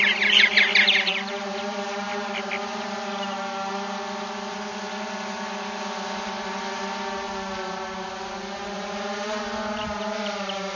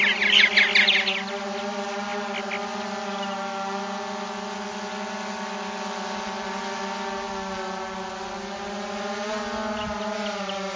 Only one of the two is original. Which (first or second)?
second